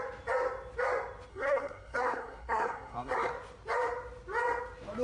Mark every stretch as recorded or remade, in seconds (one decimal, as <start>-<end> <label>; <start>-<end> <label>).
0.0-1.3 recorded; 1.3-3.3 remade; 3.3-5.0 recorded